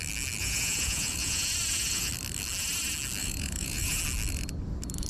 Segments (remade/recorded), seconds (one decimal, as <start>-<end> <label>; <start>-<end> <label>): 0.0-0.4 recorded; 0.4-2.1 remade; 2.1-3.2 recorded; 3.2-4.0 remade; 4.0-5.1 recorded